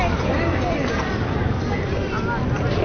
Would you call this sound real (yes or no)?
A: no